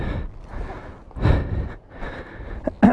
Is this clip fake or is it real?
real